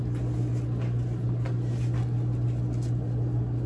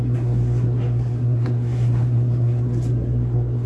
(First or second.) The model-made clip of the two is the second